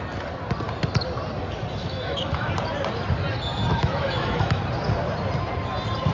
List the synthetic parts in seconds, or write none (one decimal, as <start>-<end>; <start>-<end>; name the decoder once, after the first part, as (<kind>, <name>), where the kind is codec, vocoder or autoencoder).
1.8-2.5 (autoencoder, DAC-VAE); 3.7-4.6